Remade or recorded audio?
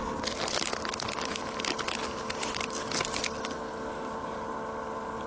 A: recorded